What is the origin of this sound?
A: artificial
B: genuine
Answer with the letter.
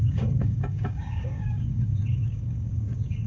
A